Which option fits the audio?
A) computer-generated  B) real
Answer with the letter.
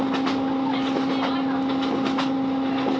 B